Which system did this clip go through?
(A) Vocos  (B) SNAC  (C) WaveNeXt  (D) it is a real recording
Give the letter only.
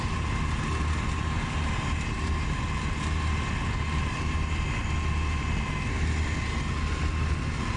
D